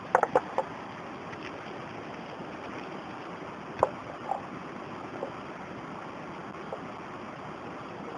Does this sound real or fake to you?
real